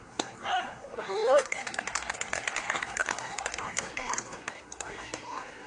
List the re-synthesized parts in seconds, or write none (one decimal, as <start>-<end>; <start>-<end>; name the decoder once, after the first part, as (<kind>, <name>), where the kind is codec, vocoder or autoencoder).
0.0-5.7 (codec, SNAC)